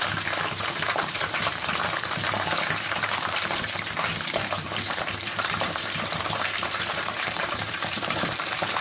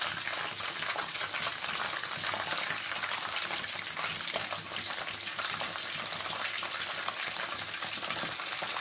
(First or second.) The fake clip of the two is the first